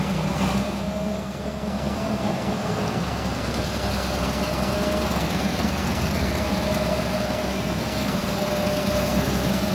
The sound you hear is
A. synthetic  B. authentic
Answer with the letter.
A